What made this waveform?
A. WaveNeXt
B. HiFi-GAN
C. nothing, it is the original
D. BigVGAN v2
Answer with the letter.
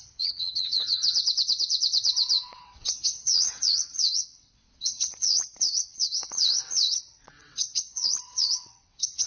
A